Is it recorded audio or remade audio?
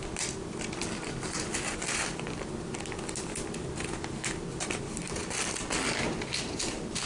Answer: recorded